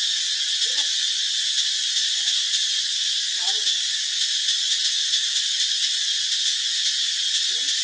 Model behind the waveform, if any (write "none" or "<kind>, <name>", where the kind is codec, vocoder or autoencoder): vocoder, BigVGAN v2